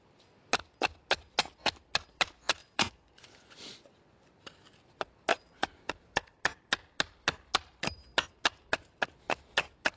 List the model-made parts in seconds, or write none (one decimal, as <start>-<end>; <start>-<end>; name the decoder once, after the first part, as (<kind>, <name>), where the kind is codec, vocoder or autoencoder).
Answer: 2.6-4.3 (vocoder, Vocos); 5.3-5.9